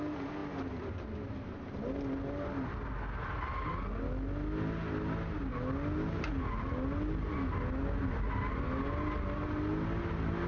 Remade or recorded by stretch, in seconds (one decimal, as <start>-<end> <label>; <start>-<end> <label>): 0.0-10.5 recorded